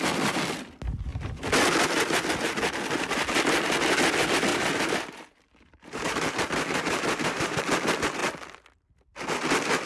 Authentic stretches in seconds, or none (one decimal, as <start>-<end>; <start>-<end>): 0.0-4.5; 7.6-9.9